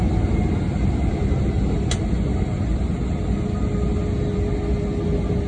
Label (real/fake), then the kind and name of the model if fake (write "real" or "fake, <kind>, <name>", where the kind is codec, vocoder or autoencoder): real